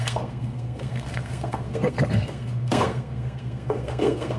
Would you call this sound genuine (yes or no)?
no